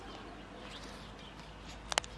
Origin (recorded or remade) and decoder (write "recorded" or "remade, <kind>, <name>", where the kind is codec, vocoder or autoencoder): recorded